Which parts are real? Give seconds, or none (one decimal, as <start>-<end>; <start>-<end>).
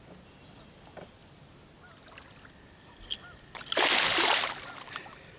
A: 0.0-5.4